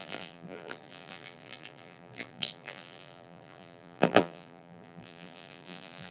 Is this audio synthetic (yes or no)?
yes